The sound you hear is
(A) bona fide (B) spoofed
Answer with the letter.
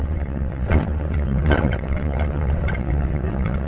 B